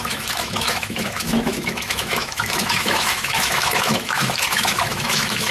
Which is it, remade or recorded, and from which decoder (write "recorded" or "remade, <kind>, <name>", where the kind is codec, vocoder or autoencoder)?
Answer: remade, autoencoder, DAC-VAE